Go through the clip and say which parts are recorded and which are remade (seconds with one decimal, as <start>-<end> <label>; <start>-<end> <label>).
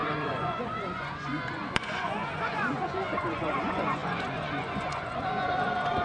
0.0-6.0 remade